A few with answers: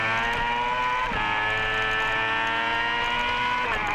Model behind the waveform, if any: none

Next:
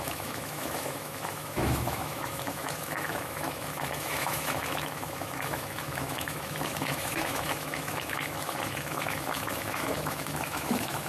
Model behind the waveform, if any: autoencoder, DAC-VAE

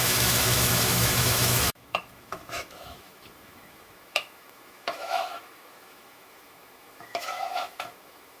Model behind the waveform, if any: autoencoder, DAC-VAE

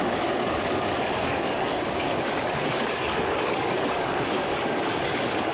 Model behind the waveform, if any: codec, DAC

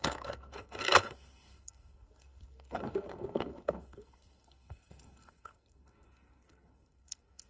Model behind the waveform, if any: codec, SNAC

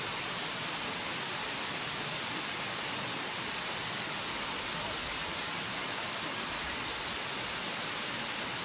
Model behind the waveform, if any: none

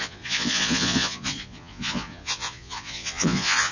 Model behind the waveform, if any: vocoder, Vocos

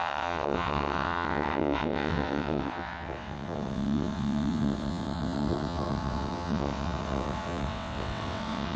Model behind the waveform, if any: vocoder, WaveNeXt